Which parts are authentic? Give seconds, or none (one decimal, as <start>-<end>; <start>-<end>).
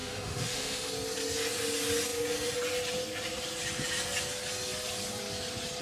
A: 0.9-5.8